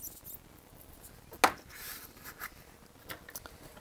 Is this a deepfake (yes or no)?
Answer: no